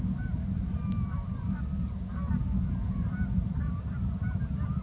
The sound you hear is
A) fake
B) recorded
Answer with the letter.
B